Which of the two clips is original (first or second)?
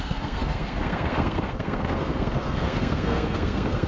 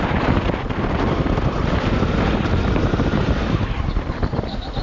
second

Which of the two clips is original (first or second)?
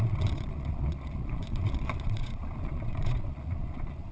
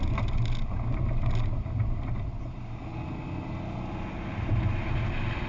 second